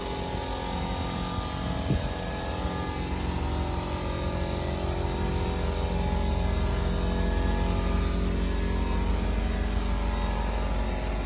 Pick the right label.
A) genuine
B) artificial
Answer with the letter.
A